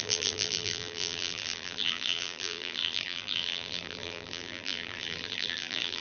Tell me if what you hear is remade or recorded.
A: remade